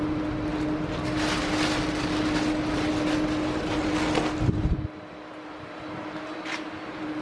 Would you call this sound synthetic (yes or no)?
no